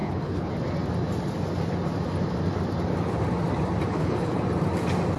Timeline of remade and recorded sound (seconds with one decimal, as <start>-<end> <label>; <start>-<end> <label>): 0.0-0.5 remade; 0.5-3.9 recorded; 3.9-4.4 remade; 4.4-5.2 recorded